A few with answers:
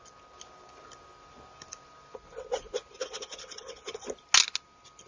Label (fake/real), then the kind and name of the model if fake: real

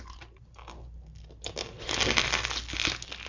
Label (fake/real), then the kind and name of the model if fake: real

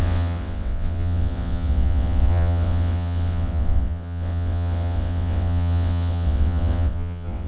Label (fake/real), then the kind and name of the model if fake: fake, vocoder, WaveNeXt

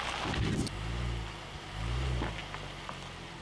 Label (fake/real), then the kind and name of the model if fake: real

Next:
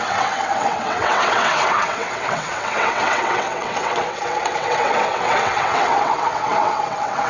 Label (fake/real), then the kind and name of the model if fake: fake, vocoder, WaveNeXt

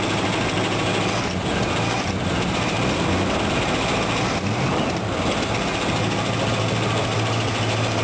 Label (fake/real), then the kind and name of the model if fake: real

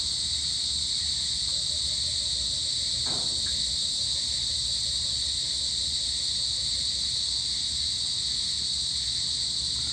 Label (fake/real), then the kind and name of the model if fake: real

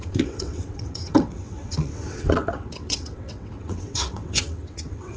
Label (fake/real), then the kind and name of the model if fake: fake, vocoder, WaveNeXt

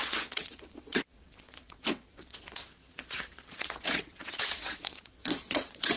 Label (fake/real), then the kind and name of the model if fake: fake, vocoder, WaveNeXt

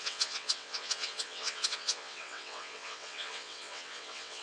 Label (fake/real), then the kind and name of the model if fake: fake, vocoder, WaveNeXt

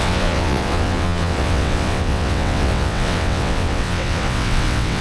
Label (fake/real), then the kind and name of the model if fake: fake, vocoder, WaveNeXt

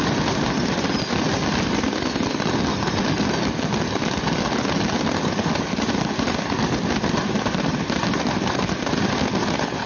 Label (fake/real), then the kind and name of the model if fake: real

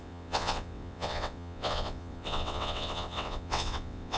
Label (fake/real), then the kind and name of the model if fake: fake, vocoder, WaveNeXt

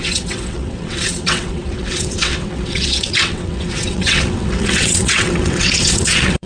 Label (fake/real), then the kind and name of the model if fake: fake, vocoder, WaveNeXt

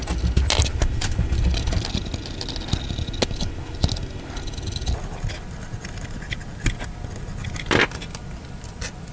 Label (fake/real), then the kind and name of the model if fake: real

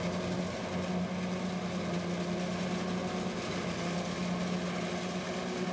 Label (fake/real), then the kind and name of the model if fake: real